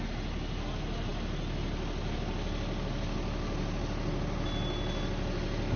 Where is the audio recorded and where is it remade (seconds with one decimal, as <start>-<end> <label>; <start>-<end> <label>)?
0.0-5.8 recorded